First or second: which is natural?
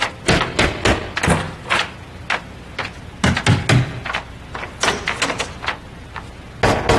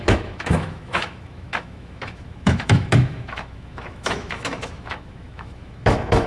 first